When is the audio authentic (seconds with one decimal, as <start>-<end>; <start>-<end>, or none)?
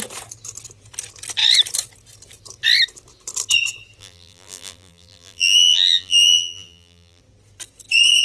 0.0-4.0; 7.2-8.2